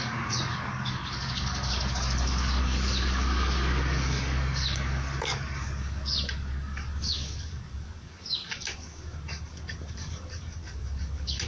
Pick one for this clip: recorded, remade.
remade